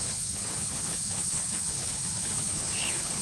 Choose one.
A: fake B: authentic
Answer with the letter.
A